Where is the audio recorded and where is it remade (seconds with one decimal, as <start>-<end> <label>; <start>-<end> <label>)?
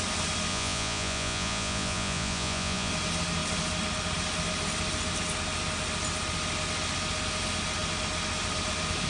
0.0-0.5 recorded; 0.5-2.9 remade; 2.9-9.1 recorded